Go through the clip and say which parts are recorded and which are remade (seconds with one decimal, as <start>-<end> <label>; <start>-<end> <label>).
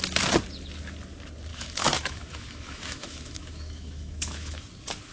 0.0-1.5 recorded; 1.5-4.6 remade; 4.6-5.1 recorded